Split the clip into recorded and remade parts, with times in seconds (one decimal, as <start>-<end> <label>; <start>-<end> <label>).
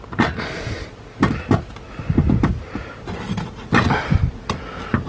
0.0-5.1 recorded